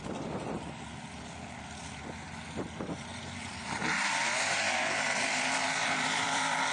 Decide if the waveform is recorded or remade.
remade